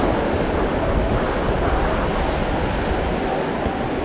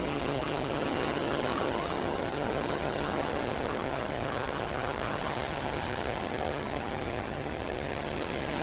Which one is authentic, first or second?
first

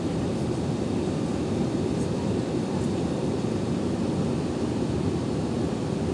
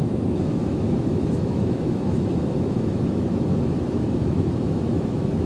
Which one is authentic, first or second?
first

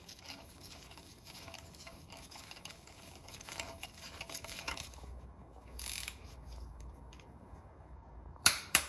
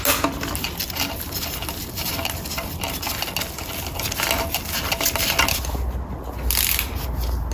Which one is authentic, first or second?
second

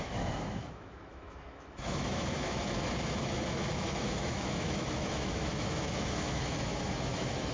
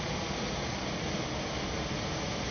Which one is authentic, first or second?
second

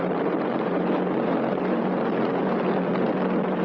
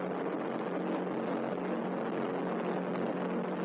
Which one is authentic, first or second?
second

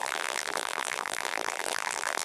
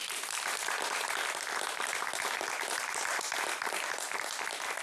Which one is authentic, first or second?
second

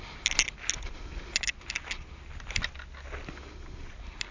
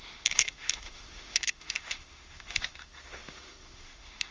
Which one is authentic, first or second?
first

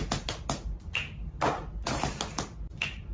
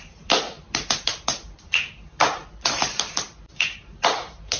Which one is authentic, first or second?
first